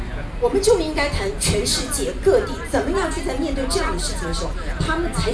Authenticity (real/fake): real